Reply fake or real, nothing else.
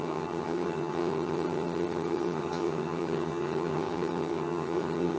fake